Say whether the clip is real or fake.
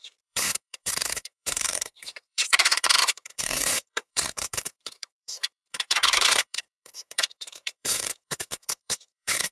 fake